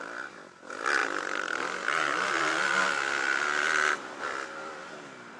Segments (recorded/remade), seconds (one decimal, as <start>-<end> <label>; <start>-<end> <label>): 0.0-5.4 recorded